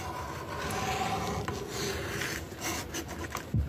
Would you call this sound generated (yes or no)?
no